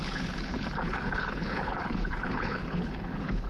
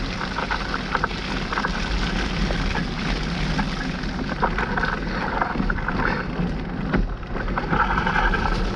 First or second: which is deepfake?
first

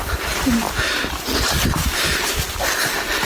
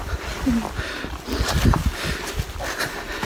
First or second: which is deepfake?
first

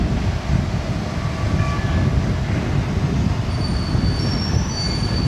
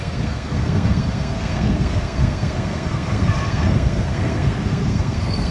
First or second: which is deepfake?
second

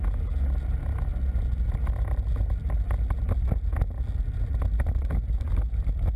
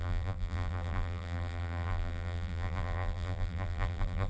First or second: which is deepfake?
second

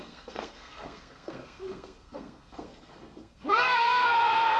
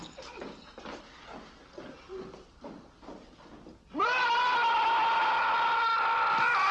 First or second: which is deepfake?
first